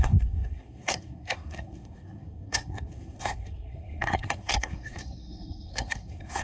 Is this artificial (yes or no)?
yes